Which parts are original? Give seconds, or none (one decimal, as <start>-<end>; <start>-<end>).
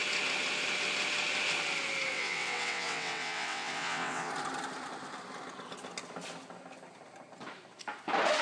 0.0-2.1; 4.3-8.4